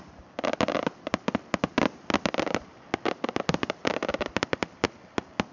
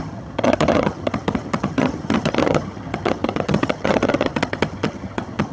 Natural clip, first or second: first